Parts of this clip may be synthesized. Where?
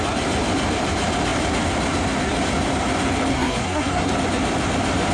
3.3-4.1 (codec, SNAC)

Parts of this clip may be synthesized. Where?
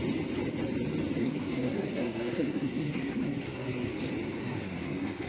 1.2-3.9 (codec, SNAC); 4.4-5.3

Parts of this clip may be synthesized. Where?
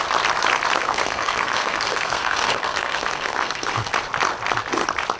0.8-3.9 (codec, SNAC)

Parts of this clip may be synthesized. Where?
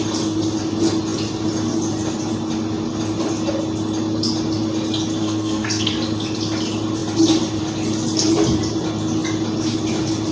5.2-5.9 (codec, SNAC)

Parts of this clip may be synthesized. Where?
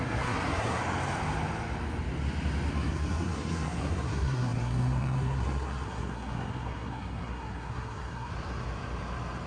0.0-0.8 (codec, SNAC); 2.7-8.3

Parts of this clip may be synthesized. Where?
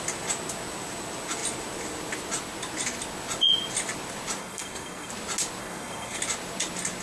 4.4-5.1 (codec, SNAC); 5.6-6.2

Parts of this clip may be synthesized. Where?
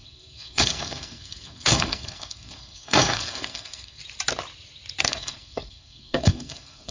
0.0-4.0 (codec, SNAC); 5.0-6.9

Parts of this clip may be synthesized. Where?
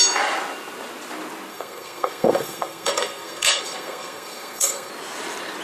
1.5-4.9 (codec, SNAC)